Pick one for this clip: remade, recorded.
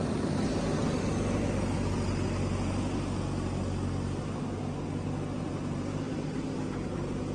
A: recorded